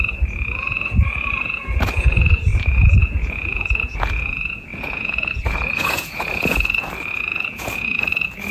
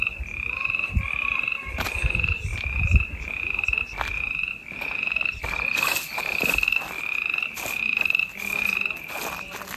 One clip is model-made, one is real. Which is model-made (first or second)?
first